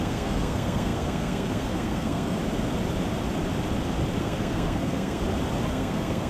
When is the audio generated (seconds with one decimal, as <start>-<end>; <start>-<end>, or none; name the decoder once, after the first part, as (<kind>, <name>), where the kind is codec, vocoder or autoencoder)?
0.0-2.4 (codec, SNAC); 4.2-5.2; 5.7-6.3